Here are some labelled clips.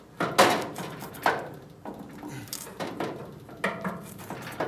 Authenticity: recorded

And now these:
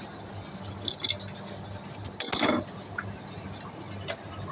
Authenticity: recorded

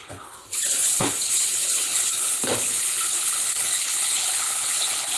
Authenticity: remade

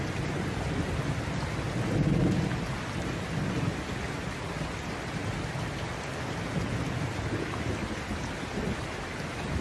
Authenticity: recorded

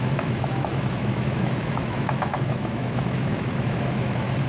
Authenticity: remade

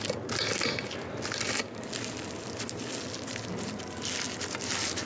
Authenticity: recorded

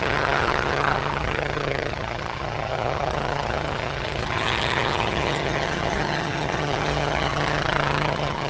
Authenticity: remade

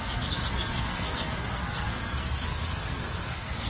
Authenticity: remade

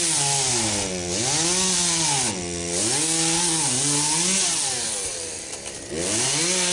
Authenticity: recorded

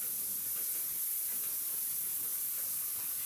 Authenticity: recorded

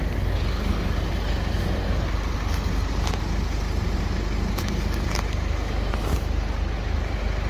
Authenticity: recorded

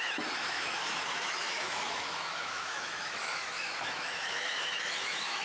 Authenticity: remade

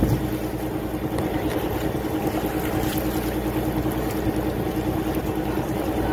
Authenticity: recorded